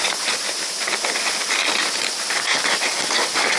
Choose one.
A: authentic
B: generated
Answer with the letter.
A